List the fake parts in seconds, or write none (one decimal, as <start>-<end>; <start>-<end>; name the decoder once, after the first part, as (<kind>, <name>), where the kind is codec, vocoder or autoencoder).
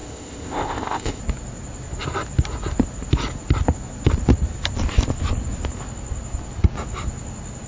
0.0-1.2 (codec, ZipCodec)